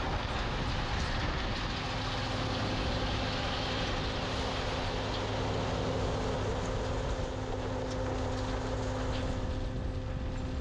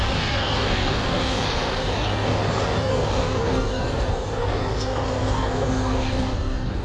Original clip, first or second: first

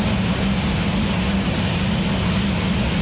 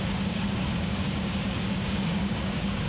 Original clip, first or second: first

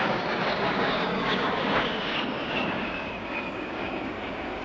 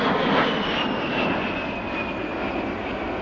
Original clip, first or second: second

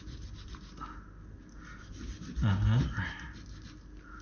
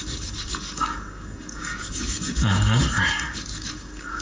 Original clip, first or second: first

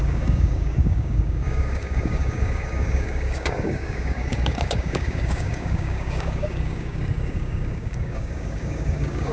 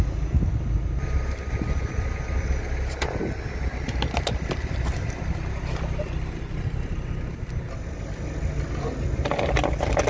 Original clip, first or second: second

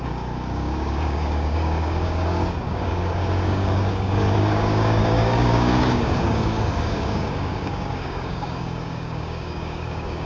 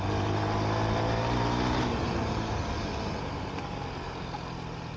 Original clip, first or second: second